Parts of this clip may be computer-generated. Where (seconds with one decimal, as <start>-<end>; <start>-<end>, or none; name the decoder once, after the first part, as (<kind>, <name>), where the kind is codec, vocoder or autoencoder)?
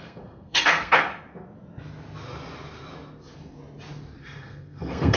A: 0.0-1.1 (codec, SNAC); 4.2-5.2